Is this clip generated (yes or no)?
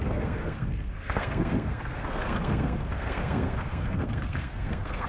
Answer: yes